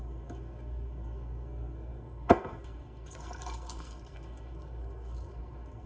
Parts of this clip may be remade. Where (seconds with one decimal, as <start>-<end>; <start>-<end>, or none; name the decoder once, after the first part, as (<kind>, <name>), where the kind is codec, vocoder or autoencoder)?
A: 0.0-5.9 (codec, SNAC)